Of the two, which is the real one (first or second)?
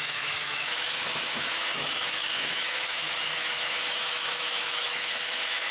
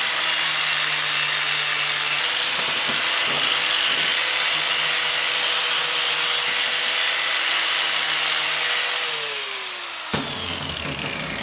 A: second